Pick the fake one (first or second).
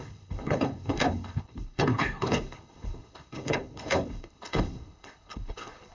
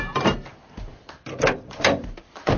first